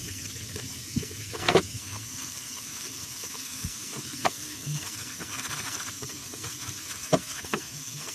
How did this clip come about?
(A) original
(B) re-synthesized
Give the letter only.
B